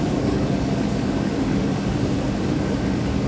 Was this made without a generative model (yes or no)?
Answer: no